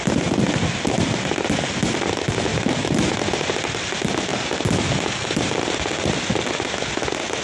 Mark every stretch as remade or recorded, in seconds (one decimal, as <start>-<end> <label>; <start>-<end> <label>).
0.0-2.5 recorded; 2.5-3.5 remade; 3.5-7.4 recorded